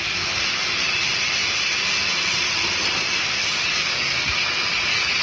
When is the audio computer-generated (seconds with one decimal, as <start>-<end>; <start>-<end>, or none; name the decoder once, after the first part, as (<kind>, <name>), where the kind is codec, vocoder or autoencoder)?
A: 3.8-4.3 (codec, SNAC)